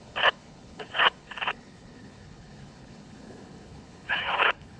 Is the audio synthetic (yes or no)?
yes